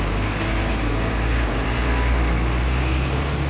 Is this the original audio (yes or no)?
yes